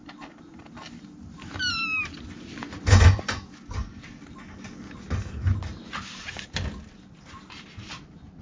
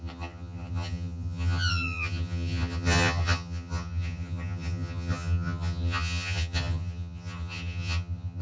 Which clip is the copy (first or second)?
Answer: second